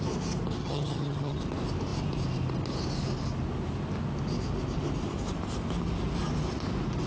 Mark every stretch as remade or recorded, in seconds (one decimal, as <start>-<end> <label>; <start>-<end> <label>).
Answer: 0.0-0.6 recorded; 0.6-1.4 remade; 1.4-7.1 recorded